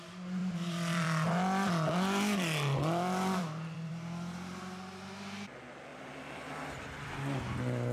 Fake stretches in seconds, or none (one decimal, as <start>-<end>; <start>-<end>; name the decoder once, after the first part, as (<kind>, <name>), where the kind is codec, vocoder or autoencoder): 0.4-3.9 (vocoder, BigVGAN v2); 5.9-7.1